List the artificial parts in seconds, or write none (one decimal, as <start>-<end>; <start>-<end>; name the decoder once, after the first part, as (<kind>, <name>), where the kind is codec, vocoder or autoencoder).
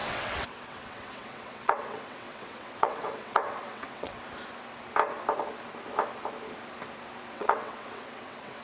0.0-4.1 (vocoder, WaveNeXt); 7.3-8.6